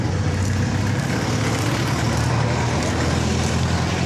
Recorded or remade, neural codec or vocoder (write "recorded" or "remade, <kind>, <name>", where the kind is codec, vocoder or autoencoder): recorded